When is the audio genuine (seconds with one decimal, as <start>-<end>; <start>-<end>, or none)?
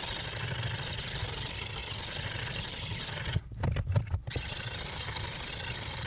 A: 0.0-6.1